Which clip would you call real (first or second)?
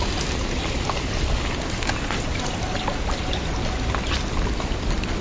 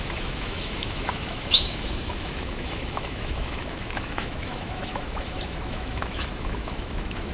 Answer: first